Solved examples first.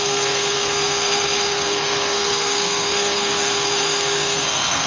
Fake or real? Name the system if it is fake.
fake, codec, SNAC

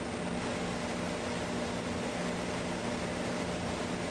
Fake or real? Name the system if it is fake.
real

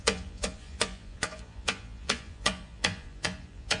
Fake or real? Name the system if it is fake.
fake, vocoder, Vocos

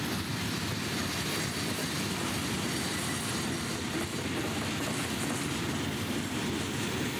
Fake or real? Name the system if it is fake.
real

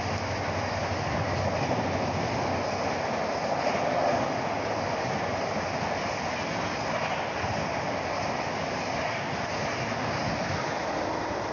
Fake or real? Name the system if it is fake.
real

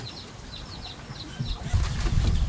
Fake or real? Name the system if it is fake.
real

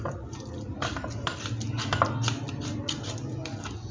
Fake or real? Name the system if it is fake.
real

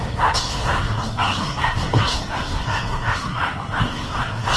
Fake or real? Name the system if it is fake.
fake, codec, SNAC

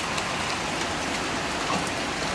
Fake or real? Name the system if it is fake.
real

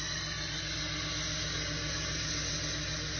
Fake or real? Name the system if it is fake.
real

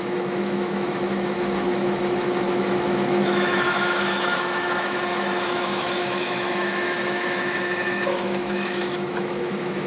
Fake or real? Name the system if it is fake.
fake, autoencoder, DAC-VAE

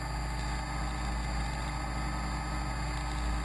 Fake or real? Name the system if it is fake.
real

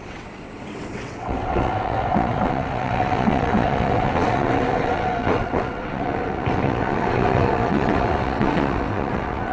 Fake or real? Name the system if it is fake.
fake, vocoder, WaveNeXt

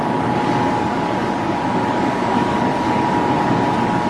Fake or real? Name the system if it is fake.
fake, codec, DAC